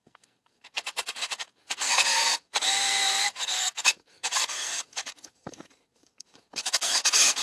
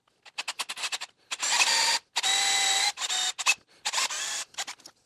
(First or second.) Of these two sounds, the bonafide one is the second